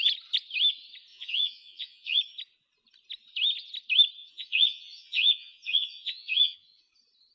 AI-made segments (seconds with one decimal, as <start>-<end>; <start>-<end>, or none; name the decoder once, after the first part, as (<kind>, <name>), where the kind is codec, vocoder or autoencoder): 1.1-2.2 (vocoder, Vocos); 4.2-6.8